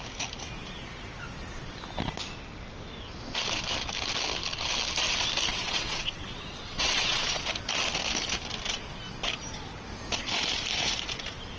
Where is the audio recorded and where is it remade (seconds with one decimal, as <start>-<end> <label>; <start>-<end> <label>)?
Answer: 0.0-5.5 recorded; 5.5-7.4 remade; 7.4-11.6 recorded